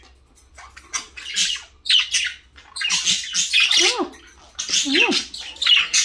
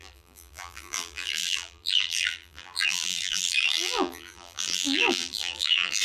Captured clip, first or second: first